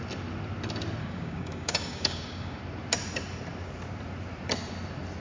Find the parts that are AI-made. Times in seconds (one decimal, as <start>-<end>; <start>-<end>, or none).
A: 1.0-2.6